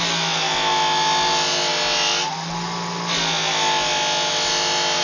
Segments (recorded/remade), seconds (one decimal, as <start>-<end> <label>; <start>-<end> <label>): 0.0-5.0 recorded